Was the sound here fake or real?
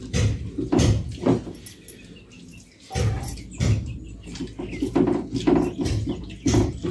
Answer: real